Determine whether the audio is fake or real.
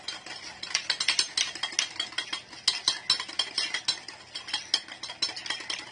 real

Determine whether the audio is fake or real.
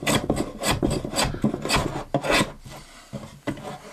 real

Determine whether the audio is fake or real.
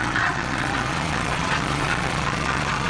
fake